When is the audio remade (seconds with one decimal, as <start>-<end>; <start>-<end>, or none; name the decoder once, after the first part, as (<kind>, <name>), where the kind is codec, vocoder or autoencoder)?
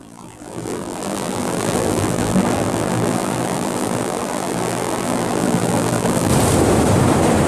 0.0-6.3 (vocoder, BigVGAN v2)